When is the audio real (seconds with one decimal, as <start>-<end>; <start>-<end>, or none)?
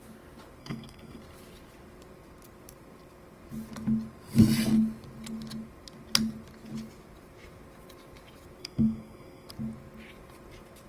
0.0-0.6; 1.2-8.6; 9.5-10.9